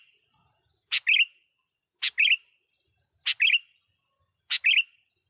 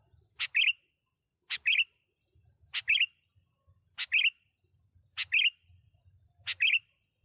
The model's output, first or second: second